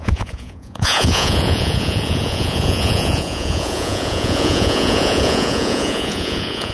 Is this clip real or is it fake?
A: fake